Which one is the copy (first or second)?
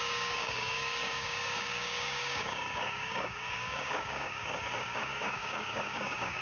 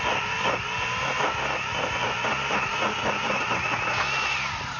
first